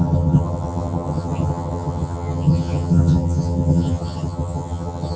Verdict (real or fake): fake